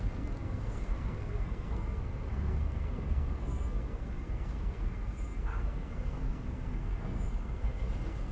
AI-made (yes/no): yes